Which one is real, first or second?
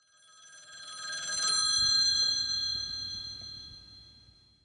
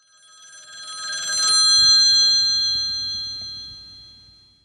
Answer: second